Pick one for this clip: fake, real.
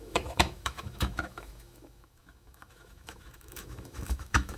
fake